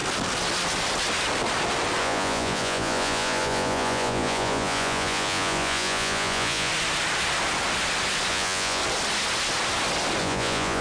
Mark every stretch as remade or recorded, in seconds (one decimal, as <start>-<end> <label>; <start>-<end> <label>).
0.0-2.0 recorded; 2.0-6.7 remade; 6.7-8.3 recorded; 8.3-8.8 remade; 8.8-10.2 recorded; 10.2-10.8 remade